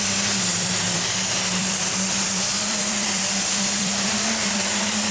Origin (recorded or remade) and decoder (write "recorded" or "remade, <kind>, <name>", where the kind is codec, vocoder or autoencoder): remade, vocoder, BigVGAN v2